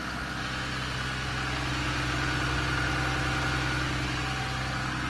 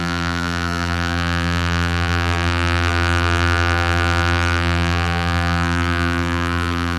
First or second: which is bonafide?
first